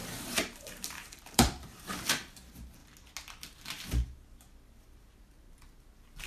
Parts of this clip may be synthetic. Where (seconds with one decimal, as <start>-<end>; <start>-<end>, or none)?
0.0-1.9